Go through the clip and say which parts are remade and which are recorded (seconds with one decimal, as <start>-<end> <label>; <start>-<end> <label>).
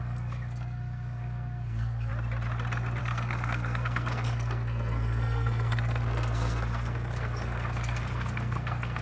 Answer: 0.0-2.1 remade; 2.1-3.0 recorded; 3.0-9.0 remade